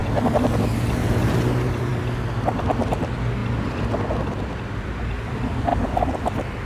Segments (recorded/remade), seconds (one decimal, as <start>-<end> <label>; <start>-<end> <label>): 0.0-5.7 recorded; 5.7-6.6 remade